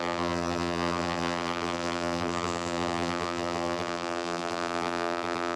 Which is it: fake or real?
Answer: fake